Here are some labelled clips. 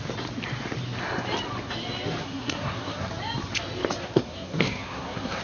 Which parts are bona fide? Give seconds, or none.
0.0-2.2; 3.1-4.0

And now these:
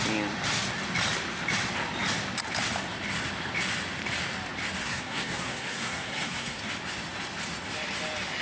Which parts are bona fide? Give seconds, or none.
0.0-4.8; 6.6-8.4

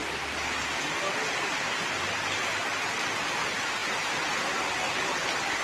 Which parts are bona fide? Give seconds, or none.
0.0-5.6

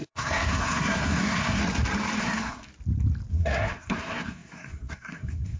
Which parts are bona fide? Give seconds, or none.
1.6-2.2; 2.7-3.3

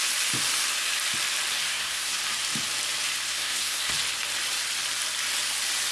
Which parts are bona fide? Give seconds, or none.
0.0-1.7; 2.2-3.3; 3.9-5.9

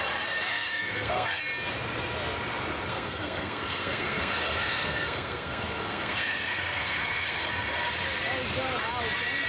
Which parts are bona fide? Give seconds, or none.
0.0-0.5; 1.4-2.9; 7.5-9.5

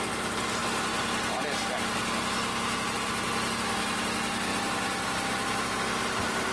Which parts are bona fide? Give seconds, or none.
0.0-6.5

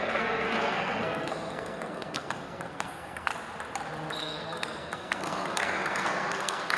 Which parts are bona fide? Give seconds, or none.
3.3-4.2